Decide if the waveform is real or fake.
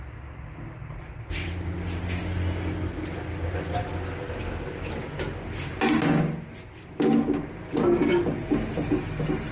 real